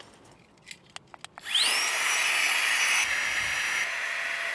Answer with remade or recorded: recorded